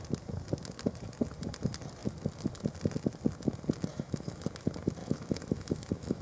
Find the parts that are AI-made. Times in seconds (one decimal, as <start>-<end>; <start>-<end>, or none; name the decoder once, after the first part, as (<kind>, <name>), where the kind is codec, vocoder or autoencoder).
3.9-4.4 (autoencoder, DAC-VAE); 5.0-6.2